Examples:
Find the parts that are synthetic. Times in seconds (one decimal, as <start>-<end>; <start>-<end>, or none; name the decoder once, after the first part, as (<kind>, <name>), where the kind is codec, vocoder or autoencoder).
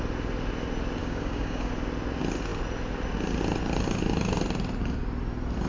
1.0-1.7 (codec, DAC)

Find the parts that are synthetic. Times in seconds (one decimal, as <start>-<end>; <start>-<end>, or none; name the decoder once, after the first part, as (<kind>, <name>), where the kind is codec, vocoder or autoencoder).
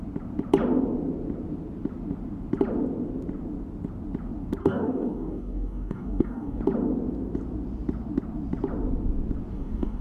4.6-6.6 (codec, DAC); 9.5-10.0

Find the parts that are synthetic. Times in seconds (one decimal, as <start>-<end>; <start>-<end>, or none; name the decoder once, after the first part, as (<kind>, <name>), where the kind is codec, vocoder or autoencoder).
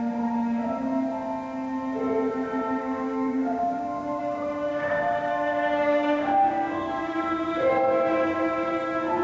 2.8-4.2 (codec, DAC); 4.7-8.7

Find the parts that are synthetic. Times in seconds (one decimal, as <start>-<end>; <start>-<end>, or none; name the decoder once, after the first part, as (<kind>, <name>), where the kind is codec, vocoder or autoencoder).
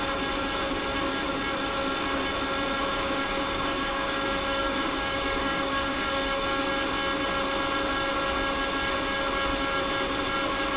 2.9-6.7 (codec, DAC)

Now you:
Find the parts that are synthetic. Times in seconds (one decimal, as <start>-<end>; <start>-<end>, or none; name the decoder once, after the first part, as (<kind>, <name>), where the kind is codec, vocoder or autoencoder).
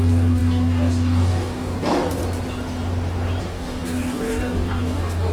0.0-2.2 (codec, DAC); 3.4-5.3